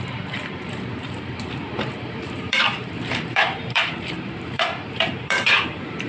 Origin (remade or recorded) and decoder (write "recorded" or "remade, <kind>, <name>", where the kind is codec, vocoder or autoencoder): remade, vocoder, BigVGAN v2